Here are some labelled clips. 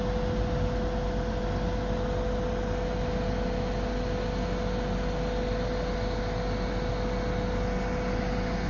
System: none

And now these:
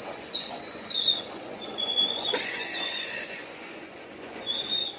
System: vocoder, Vocos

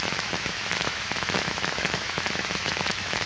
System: autoencoder, DAC-VAE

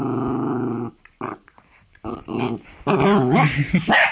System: none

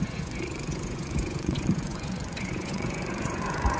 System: vocoder, Vocos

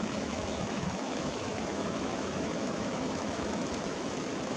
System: autoencoder, DAC-VAE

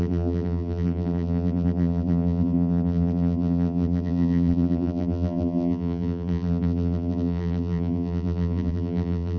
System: vocoder, BigVGAN v2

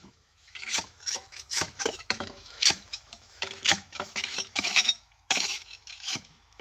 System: autoencoder, DAC-VAE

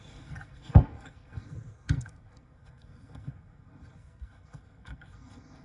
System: codec, SNAC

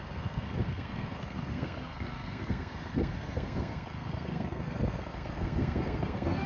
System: codec, SNAC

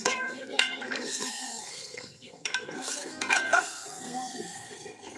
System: codec, SNAC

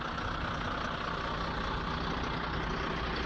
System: none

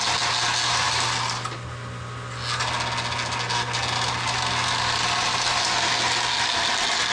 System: none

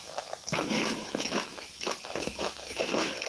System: autoencoder, DAC-VAE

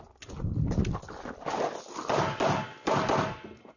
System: none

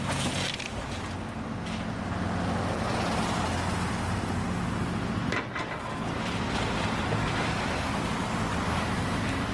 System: none